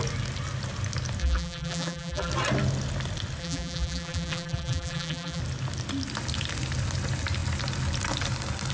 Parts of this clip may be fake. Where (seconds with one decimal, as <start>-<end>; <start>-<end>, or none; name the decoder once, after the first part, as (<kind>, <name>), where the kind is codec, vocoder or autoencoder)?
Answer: 1.2-2.3 (vocoder, BigVGAN v2); 3.4-5.4